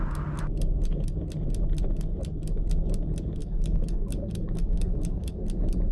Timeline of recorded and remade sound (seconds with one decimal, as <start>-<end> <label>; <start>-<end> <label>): 0.0-3.4 recorded; 3.4-5.4 remade; 5.4-5.9 recorded